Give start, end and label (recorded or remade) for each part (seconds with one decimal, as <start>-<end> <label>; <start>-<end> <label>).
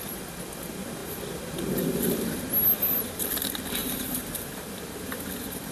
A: 0.0-3.8 recorded; 3.8-5.3 remade; 5.3-5.7 recorded